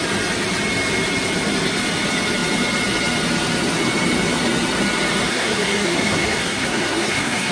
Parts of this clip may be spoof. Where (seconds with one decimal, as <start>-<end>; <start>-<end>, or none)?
5.3-7.5